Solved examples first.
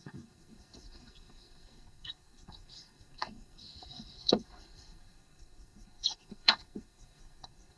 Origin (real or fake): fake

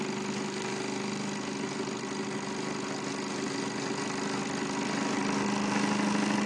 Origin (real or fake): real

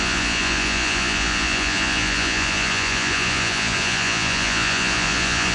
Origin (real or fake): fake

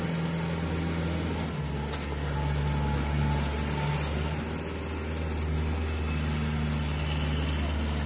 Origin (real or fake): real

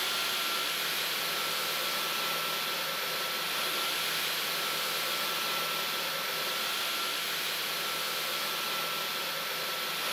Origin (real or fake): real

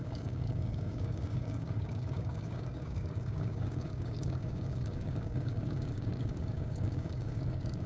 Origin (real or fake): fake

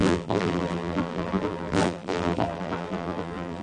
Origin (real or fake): fake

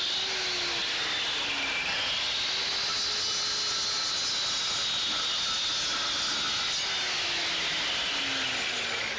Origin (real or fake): real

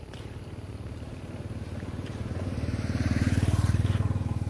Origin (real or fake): fake